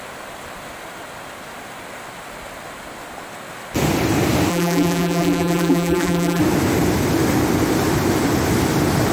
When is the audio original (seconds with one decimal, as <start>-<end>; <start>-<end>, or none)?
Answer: 0.0-4.5; 6.4-9.1